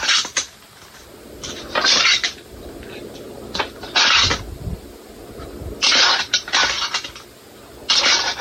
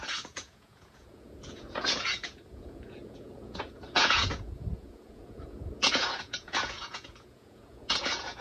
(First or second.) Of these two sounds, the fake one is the second